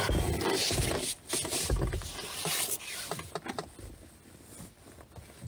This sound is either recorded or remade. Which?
recorded